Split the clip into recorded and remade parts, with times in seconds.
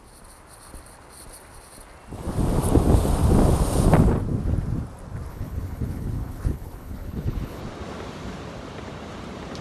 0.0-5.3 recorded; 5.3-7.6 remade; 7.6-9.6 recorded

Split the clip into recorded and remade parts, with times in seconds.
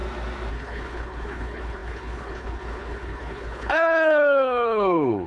0.0-0.5 recorded; 0.5-5.3 remade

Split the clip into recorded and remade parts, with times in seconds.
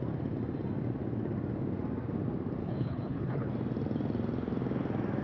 0.0-2.6 recorded; 2.6-3.5 remade; 3.5-5.2 recorded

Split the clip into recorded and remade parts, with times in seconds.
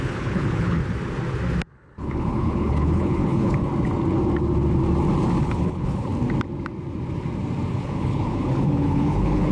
0.0-0.8 remade; 0.8-1.7 recorded; 1.7-3.7 remade; 3.7-5.4 recorded; 5.4-6.1 remade; 6.1-7.7 recorded; 7.7-9.5 remade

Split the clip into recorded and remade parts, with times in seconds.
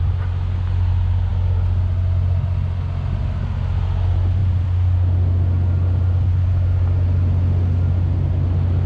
0.0-8.9 recorded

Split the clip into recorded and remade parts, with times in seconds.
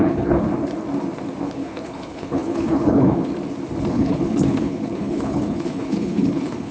0.0-0.5 remade; 0.5-1.4 recorded; 1.4-3.3 remade; 3.3-3.9 recorded; 3.9-6.7 remade